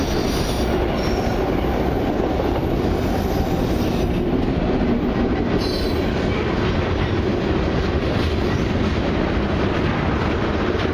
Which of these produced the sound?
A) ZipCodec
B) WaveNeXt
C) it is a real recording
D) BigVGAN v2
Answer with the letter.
C